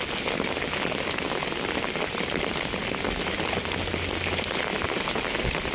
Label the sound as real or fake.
real